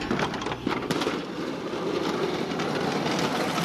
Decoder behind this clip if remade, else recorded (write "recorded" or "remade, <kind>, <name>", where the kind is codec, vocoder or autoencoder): recorded